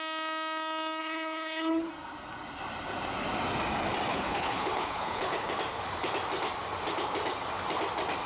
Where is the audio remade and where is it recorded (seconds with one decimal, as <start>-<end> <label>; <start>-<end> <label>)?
0.0-1.0 recorded; 1.0-1.9 remade; 1.9-4.1 recorded; 4.1-5.5 remade; 5.5-8.3 recorded